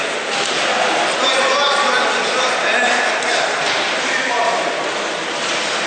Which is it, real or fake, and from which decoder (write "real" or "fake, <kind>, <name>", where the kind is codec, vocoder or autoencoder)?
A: real